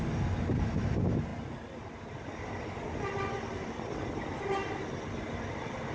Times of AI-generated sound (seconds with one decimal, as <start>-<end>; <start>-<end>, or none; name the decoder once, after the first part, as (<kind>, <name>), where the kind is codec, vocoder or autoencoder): none

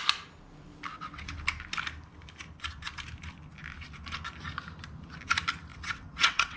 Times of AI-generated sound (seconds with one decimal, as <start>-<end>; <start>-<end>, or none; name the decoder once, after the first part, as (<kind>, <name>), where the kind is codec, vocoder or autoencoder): 0.9-1.4 (vocoder, WaveNeXt); 5.7-6.6

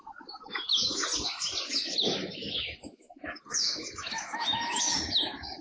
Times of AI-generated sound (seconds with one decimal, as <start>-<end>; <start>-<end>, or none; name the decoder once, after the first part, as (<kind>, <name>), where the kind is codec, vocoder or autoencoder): 0.0-1.1 (autoencoder, DAC-VAE); 1.7-5.6

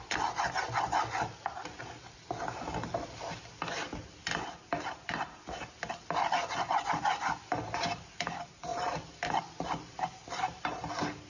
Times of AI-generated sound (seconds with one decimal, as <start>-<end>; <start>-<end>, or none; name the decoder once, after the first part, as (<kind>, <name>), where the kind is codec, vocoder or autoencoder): 8.7-10.7 (vocoder, BigVGAN v2)

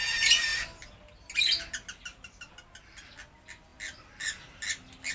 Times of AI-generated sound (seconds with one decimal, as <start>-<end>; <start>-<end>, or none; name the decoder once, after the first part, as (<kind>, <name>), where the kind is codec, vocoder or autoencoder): none

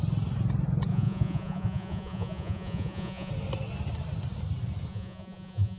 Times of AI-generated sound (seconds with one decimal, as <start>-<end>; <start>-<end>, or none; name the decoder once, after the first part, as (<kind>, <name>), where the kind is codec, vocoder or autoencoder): 0.9-3.3 (vocoder, Vocos); 4.9-5.8